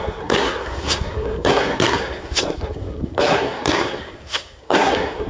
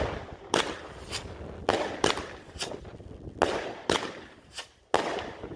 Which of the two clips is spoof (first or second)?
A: first